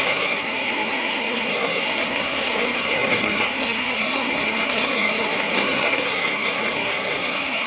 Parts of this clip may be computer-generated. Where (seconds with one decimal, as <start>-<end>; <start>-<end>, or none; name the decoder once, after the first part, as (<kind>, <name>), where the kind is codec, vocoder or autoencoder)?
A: 0.0-7.7 (codec, SNAC)